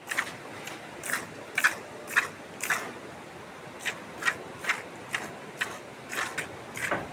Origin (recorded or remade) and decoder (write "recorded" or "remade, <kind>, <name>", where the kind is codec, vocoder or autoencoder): recorded